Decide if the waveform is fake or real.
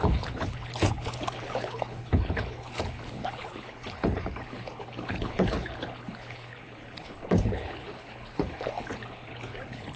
fake